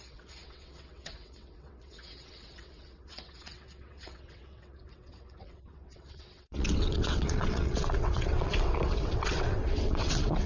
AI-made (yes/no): yes